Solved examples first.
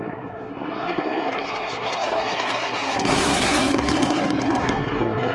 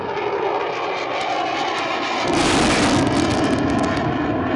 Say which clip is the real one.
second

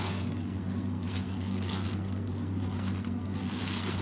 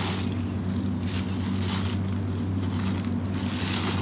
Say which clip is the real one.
second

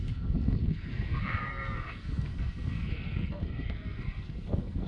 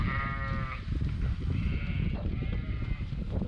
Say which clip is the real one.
second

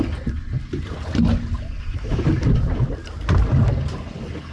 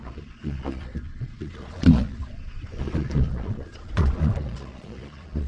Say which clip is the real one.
first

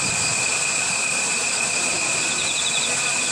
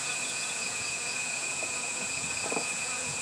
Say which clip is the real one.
first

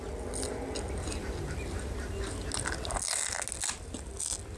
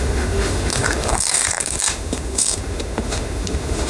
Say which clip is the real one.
first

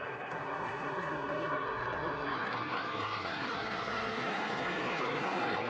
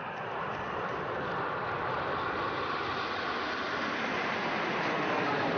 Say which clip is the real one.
second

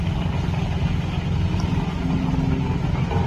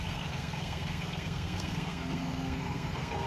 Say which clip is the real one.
first